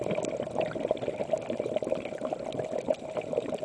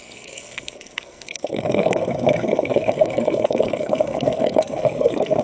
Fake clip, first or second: second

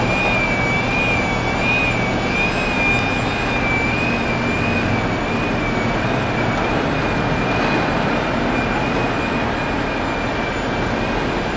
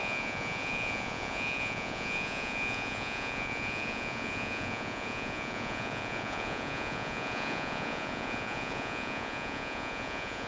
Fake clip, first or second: second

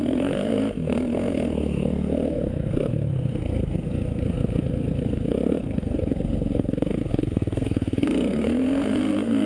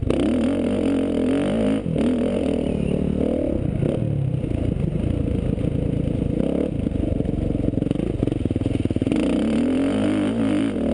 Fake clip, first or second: first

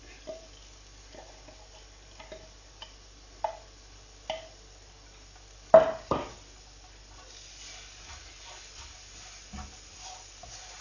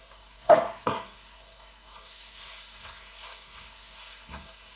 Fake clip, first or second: second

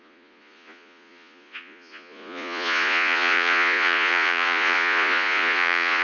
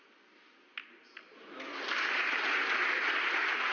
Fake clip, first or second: first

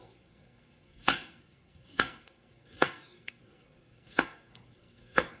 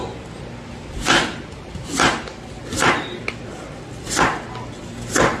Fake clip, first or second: first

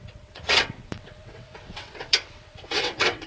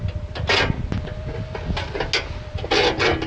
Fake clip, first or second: first